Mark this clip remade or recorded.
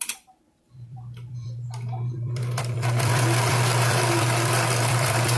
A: remade